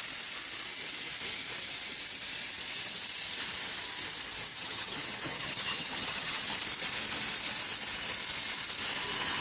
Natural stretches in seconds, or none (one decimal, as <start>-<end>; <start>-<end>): 0.0-4.5; 6.4-9.4